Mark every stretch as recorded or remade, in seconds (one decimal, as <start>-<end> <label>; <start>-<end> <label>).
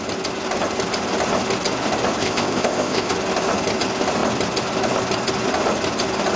0.0-2.2 recorded; 2.2-3.1 remade; 3.1-6.4 recorded